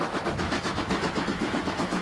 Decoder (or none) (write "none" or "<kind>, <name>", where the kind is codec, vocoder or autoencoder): autoencoder, DAC-VAE